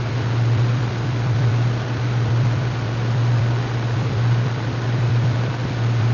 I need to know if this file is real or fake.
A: fake